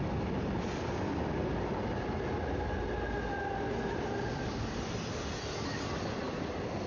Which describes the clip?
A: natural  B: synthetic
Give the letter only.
A